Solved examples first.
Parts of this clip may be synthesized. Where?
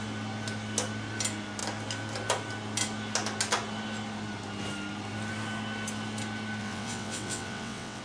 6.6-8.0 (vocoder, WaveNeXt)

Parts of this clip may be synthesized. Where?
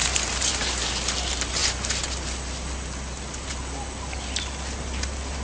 none